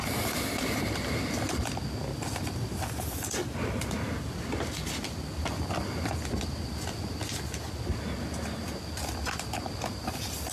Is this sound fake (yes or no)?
no